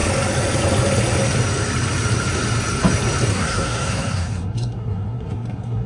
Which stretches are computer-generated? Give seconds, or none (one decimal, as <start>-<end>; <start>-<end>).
3.3-5.9